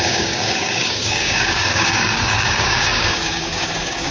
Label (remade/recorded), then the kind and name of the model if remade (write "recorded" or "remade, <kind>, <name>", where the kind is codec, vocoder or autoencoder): remade, codec, DAC